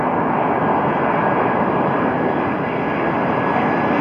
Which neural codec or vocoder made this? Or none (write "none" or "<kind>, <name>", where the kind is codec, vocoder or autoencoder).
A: none